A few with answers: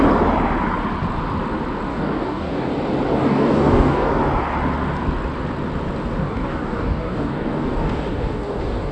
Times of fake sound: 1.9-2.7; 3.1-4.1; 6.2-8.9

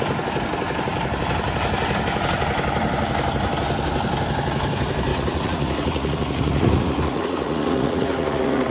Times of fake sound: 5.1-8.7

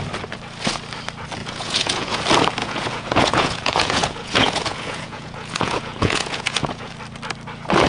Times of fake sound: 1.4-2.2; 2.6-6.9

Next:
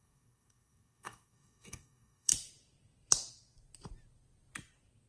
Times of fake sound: 0.0-2.3

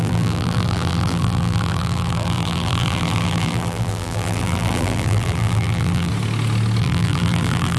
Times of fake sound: 0.0-6.1; 6.8-7.8